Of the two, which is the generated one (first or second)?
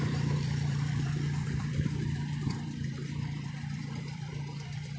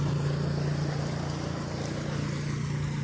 first